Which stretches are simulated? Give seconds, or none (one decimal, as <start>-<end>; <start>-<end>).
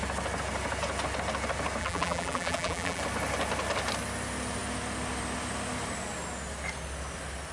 1.8-3.0